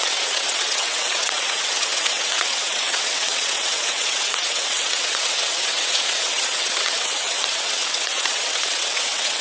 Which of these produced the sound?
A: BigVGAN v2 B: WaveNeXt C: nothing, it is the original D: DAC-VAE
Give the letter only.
B